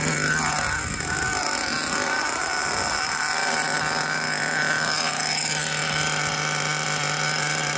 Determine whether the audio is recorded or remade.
recorded